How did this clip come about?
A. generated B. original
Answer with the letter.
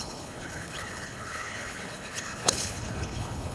A